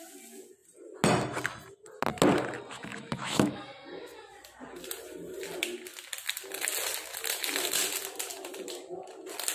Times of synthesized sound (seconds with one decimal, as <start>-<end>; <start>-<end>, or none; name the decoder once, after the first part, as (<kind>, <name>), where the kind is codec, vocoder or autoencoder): 2.9-3.6 (autoencoder, DAC-VAE)